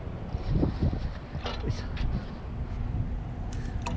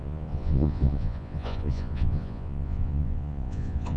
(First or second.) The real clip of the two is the first